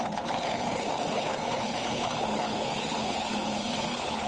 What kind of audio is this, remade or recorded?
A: remade